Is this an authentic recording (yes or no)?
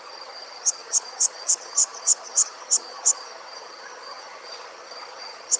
no